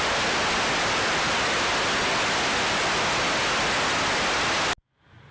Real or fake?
real